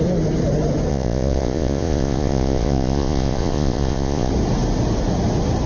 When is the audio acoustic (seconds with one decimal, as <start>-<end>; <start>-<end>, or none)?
0.0-0.9; 4.3-5.7